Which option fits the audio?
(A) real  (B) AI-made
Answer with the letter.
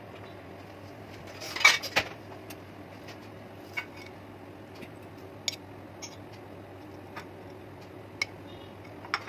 A